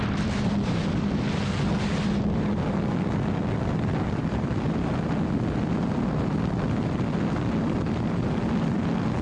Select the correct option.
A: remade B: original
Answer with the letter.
B